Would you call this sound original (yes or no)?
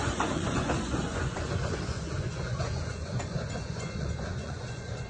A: no